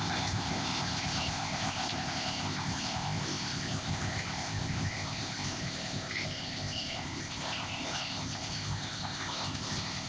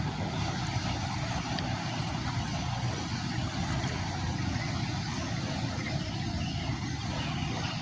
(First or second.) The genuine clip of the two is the second